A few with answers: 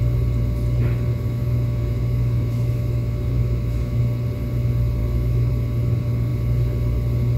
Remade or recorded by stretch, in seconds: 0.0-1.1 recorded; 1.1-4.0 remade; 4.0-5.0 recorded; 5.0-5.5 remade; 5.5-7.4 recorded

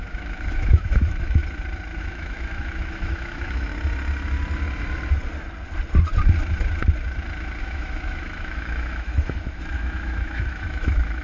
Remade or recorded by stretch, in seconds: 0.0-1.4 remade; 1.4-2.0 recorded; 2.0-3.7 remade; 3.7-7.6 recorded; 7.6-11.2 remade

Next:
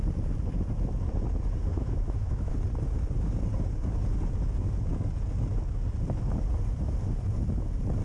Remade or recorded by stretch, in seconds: 0.0-1.7 recorded; 1.7-2.5 remade; 2.5-8.0 recorded

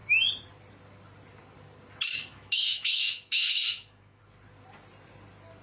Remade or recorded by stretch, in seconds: 0.0-2.1 recorded; 2.1-4.2 remade; 4.2-5.6 recorded

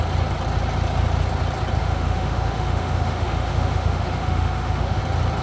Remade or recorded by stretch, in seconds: 0.0-1.8 recorded; 1.8-5.0 remade; 5.0-5.4 recorded

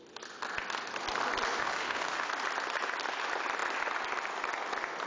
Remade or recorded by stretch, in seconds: 0.0-1.6 recorded; 1.6-2.3 remade; 2.3-5.1 recorded

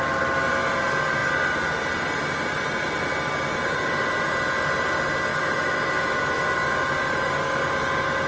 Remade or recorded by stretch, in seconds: 0.0-5.3 recorded; 5.3-6.2 remade; 6.2-8.3 recorded